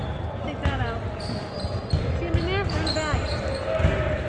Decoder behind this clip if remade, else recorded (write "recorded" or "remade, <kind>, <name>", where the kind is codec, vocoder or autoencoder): recorded